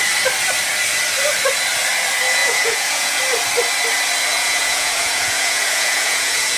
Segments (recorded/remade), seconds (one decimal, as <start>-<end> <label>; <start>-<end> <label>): 0.0-2.4 recorded; 2.4-3.2 remade; 3.2-4.3 recorded; 4.3-6.6 remade